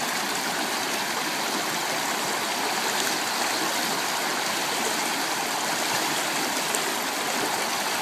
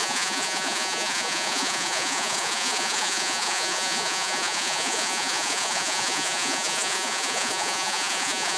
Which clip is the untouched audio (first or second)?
first